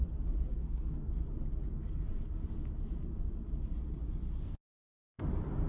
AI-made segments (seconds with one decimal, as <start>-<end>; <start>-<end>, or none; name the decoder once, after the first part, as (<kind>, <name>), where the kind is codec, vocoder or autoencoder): 0.5-1.1 (codec, SNAC); 4.4-5.2